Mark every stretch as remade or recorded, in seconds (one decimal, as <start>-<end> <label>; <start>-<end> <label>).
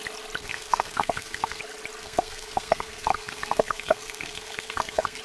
0.0-0.4 recorded; 0.4-1.6 remade; 1.6-2.0 recorded; 2.0-5.2 remade